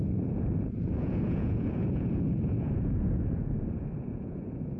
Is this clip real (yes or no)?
no